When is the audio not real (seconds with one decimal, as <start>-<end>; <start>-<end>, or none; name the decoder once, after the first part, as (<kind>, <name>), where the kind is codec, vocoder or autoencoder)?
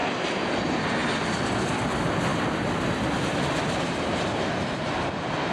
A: 0.0-0.5 (vocoder, BigVGAN v2)